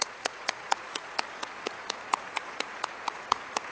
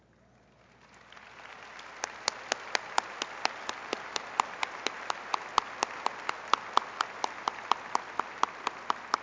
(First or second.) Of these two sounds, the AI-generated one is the first